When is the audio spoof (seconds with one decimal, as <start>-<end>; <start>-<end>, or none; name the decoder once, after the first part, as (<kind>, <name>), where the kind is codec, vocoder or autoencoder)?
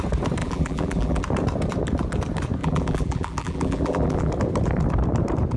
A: 0.4-1.2 (vocoder, BigVGAN v2); 2.6-4.3